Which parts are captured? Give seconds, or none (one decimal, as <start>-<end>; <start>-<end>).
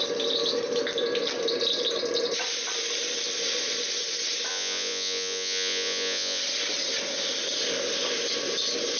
0.0-4.5; 6.4-9.0